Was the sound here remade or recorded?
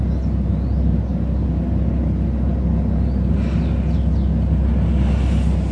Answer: recorded